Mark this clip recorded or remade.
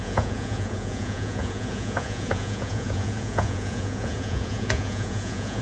remade